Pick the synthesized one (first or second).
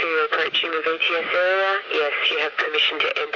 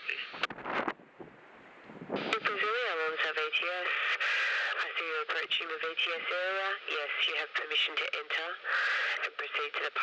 first